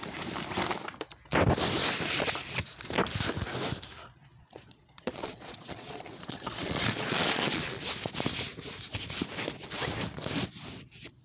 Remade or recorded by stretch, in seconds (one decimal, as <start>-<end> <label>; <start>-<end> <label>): 0.0-4.4 recorded; 4.4-7.9 remade; 7.9-11.2 recorded